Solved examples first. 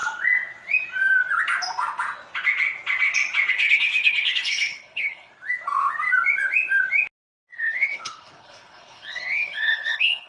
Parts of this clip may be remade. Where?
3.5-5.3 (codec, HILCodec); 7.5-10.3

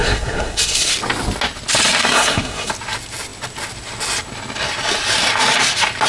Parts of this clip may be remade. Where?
0.0-0.9 (codec, SNAC); 2.0-2.7